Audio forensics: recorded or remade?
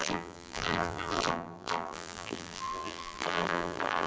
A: remade